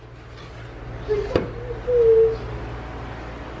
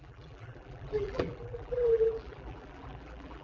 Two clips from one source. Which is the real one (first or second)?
first